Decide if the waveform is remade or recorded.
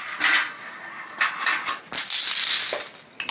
recorded